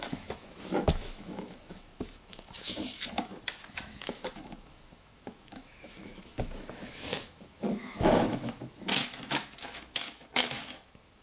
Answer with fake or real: fake